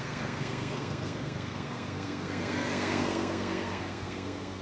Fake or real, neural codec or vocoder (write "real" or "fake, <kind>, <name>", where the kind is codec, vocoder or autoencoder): fake, codec, SNAC